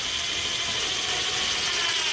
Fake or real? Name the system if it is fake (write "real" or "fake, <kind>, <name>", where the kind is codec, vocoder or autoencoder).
real